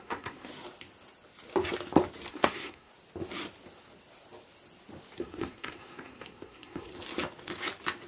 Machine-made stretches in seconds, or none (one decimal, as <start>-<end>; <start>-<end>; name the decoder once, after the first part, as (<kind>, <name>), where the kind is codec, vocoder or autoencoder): 0.0-0.5 (codec, SNAC); 2.3-2.9; 5.2-6.9